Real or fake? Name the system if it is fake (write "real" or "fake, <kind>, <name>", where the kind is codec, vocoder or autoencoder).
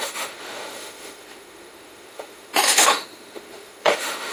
fake, autoencoder, DAC-VAE